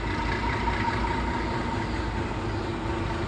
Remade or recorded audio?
recorded